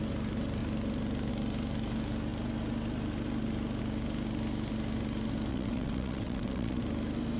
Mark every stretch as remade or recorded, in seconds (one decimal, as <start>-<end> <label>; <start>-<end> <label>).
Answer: 0.0-5.5 recorded; 5.5-6.8 remade; 6.8-7.4 recorded